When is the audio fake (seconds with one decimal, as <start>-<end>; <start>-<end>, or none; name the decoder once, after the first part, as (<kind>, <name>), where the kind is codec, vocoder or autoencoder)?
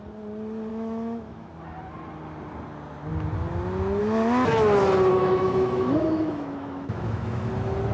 0.7-1.5 (autoencoder, DAC-VAE); 5.1-7.5